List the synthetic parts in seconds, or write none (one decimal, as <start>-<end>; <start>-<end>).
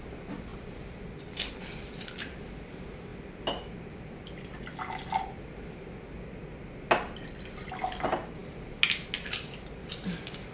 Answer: none